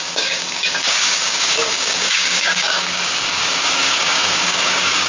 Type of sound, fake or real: fake